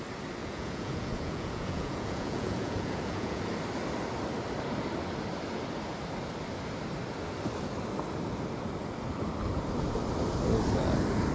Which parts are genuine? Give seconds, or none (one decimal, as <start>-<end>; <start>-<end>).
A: 0.0-0.4; 3.4-11.3